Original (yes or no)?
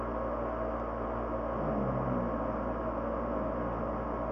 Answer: yes